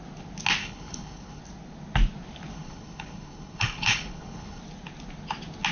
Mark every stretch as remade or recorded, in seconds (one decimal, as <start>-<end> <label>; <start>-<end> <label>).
0.0-0.6 recorded; 0.6-1.4 remade; 1.4-2.5 recorded; 2.5-4.6 remade; 4.6-5.7 recorded